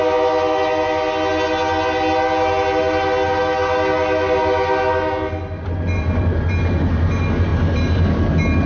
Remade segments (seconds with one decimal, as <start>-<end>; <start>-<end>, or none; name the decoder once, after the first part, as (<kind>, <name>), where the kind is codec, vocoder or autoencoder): none